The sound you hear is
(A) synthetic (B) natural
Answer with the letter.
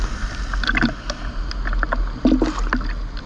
B